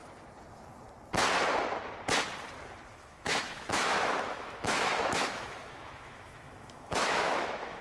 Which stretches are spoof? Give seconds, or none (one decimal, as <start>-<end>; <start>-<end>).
3.0-7.8